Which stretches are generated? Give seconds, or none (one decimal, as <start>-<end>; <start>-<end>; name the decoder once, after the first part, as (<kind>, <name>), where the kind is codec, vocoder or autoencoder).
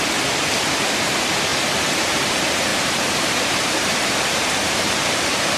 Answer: 2.7-5.6 (vocoder, BigVGAN v2)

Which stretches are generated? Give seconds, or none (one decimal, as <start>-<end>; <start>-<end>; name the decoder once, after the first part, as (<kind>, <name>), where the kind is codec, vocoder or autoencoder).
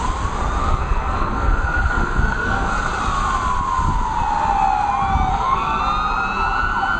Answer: 0.6-2.7 (codec, SNAC); 5.3-5.8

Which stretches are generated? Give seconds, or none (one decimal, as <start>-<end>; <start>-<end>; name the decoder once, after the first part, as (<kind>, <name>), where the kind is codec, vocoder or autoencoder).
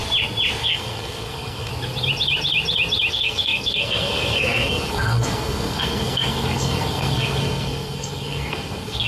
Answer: 0.6-1.7 (codec, SNAC); 3.1-9.1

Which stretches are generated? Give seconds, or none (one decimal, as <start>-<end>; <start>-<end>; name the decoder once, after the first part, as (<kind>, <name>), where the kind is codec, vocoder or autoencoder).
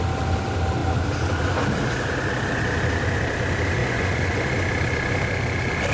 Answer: 3.8-4.4 (vocoder, Vocos)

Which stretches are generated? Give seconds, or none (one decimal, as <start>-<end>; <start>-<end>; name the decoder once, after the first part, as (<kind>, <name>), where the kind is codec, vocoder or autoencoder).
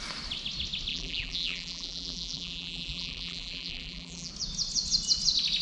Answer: 0.9-4.3 (vocoder, BigVGAN v2)